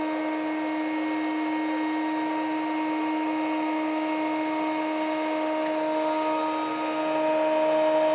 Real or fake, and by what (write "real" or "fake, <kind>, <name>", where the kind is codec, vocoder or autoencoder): real